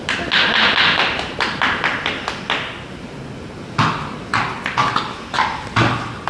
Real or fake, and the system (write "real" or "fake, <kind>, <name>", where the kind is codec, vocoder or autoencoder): real